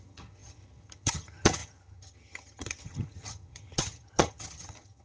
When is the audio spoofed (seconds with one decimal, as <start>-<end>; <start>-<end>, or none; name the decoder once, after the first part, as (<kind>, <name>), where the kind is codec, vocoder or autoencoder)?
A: 0.0-5.0 (vocoder, HiFi-GAN)